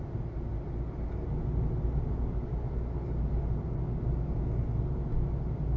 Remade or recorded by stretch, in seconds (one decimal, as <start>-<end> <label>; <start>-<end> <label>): 0.0-5.8 recorded